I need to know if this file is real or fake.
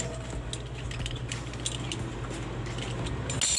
real